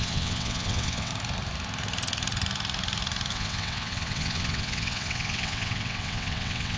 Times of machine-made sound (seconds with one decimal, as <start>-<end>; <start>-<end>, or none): 0.0-1.1; 3.3-6.8